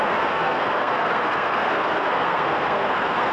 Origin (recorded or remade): remade